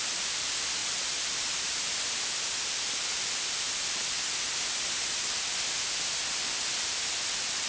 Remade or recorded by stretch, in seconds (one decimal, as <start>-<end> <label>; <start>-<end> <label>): 0.0-7.7 recorded